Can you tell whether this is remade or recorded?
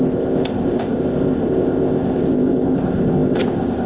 remade